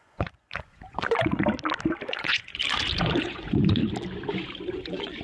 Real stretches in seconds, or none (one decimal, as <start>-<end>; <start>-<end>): 1.3-2.1; 2.6-3.2; 3.8-4.7